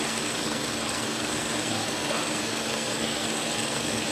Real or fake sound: fake